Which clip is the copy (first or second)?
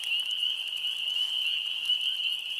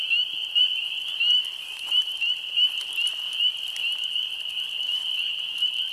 second